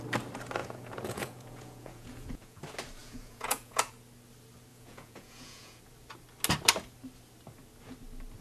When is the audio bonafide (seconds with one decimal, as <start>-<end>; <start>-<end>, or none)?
0.0-0.6; 2.6-3.0; 3.9-4.7; 5.8-8.4